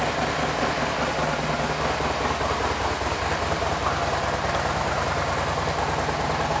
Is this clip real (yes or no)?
yes